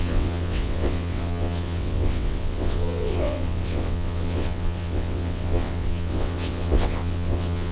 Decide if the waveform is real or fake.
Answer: fake